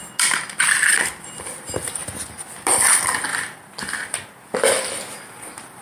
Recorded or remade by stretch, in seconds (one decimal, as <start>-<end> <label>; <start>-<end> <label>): 0.0-5.8 recorded